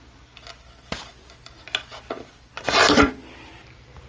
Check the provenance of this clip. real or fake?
real